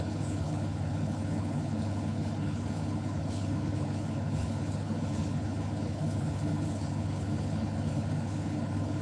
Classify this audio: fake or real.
fake